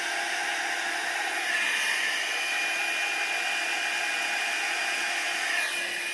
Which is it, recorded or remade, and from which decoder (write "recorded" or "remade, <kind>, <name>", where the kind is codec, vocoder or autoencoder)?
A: recorded